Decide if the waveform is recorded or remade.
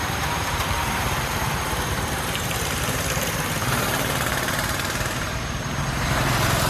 remade